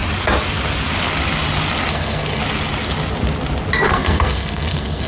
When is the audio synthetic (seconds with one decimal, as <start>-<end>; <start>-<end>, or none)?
1.9-2.4; 3.9-5.1